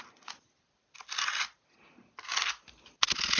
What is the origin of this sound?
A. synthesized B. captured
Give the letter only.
B